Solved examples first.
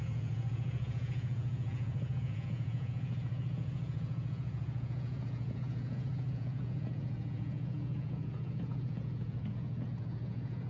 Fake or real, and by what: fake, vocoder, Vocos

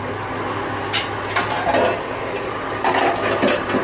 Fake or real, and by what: real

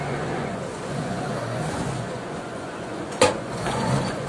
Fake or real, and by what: fake, vocoder, Vocos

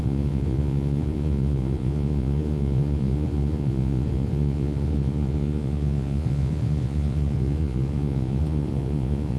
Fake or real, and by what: fake, vocoder, Vocos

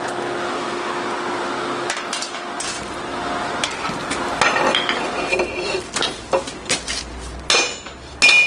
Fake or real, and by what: real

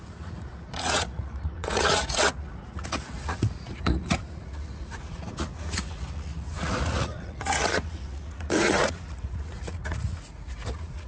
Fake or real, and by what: fake, vocoder, Vocos